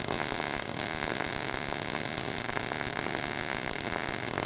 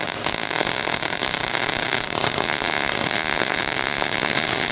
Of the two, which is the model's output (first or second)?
second